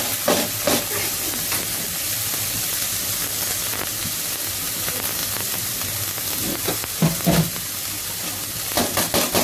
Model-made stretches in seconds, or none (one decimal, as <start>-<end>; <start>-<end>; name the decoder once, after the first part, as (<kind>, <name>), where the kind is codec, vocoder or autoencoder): 5.2-9.0 (vocoder, BigVGAN v2)